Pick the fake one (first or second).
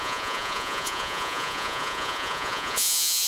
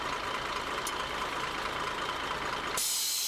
first